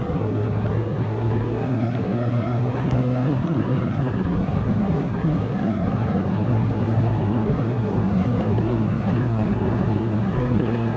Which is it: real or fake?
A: fake